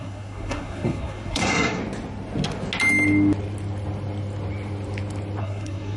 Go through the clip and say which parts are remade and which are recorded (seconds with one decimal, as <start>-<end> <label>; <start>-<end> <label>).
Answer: 0.0-1.8 remade; 1.8-5.4 recorded; 5.4-6.0 remade